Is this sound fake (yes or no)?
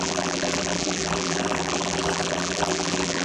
yes